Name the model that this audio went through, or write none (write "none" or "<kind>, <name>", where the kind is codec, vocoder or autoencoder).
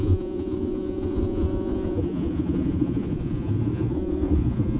vocoder, Vocos